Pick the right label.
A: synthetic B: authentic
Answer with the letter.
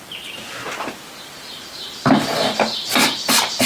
A